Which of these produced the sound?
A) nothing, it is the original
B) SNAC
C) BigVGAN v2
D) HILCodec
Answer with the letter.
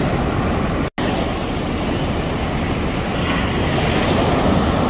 A